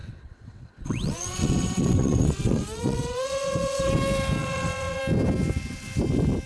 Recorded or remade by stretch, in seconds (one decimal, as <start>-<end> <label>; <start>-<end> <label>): 0.0-3.9 remade; 3.9-4.4 recorded; 4.4-5.0 remade; 5.0-6.5 recorded